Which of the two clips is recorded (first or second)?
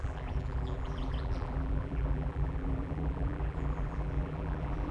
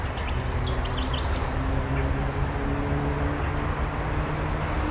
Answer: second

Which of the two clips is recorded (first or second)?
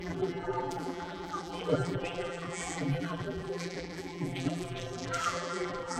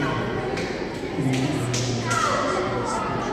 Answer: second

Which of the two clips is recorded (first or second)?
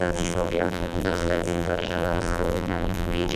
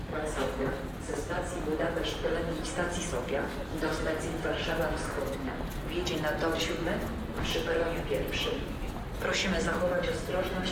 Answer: second